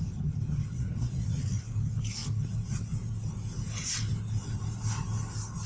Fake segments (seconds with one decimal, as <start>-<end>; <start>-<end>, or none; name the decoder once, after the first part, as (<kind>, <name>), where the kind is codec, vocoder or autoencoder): 0.7-1.6 (vocoder, Vocos)

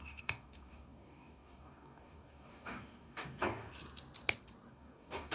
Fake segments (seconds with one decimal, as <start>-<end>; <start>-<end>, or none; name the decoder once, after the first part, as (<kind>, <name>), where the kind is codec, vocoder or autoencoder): 0.0-3.7 (codec, DAC); 4.7-5.3

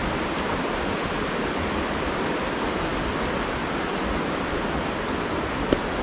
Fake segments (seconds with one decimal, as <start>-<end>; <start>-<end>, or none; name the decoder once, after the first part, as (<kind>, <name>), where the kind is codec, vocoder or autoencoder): 0.0-2.9 (vocoder, BigVGAN v2); 4.9-6.0

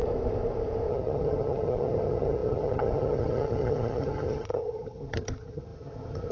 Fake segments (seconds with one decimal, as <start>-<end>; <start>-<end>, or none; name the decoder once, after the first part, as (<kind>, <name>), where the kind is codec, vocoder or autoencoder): 0.9-6.3 (vocoder, HiFi-GAN)

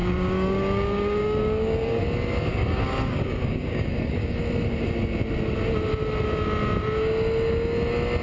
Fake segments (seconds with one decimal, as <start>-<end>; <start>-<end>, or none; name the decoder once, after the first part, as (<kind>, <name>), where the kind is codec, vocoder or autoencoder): 0.0-2.0 (codec, DAC); 2.5-4.4